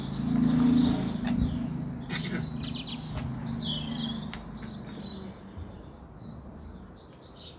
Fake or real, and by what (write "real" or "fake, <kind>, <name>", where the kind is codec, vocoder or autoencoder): real